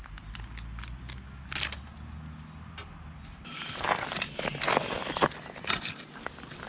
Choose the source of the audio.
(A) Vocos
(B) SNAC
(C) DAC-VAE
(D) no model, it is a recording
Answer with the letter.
D